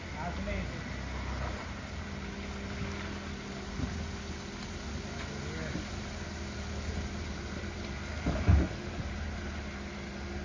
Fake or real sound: real